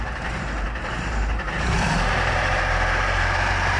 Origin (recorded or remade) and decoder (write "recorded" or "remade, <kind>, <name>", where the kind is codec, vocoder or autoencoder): remade, vocoder, BigVGAN v2